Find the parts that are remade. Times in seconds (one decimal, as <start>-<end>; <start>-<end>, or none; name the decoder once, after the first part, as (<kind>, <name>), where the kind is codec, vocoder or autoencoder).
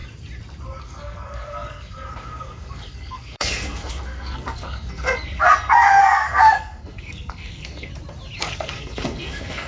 0.8-7.9 (codec, SNAC); 8.4-9.7